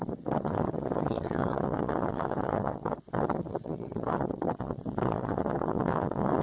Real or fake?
fake